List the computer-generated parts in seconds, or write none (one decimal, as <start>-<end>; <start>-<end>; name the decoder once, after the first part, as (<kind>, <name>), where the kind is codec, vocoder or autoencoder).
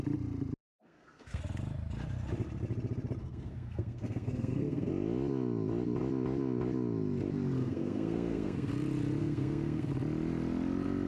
0.6-1.4 (codec, SNAC); 3.2-4.9; 7.6-8.7; 9.2-9.9